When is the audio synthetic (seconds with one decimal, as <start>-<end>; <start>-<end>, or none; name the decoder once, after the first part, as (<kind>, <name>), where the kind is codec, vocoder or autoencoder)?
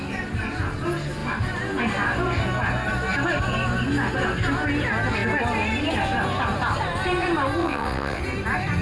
7.6-8.2 (vocoder, WaveNeXt)